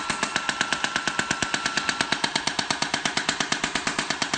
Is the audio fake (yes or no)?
no